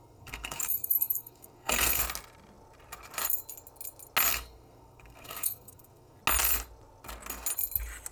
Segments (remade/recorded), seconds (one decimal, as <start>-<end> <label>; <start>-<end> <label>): 0.0-2.0 remade; 2.0-4.3 recorded; 4.3-6.2 remade; 6.2-8.1 recorded